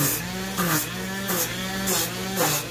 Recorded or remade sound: recorded